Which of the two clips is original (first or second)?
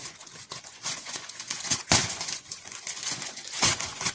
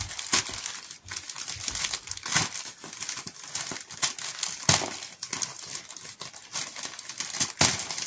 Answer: second